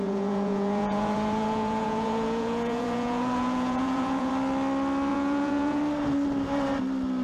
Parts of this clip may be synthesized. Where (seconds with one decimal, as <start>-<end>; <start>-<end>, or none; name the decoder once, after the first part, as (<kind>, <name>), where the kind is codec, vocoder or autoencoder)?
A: 0.0-4.3 (vocoder, Vocos); 5.1-5.8